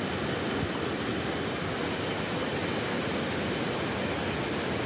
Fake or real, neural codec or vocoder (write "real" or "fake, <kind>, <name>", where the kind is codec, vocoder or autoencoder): real